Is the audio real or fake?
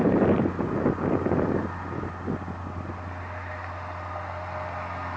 real